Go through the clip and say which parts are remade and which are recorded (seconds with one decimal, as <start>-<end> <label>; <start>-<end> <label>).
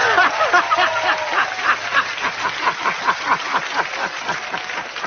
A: 0.0-5.1 recorded